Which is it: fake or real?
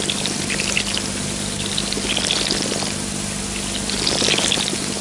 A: real